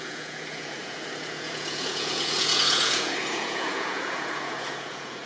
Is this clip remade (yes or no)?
yes